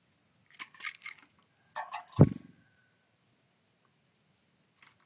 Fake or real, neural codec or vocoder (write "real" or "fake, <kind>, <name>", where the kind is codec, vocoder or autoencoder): real